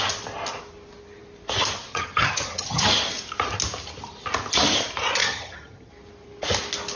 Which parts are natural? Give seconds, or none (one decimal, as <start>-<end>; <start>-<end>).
0.0-1.9; 2.8-5.2; 5.9-7.0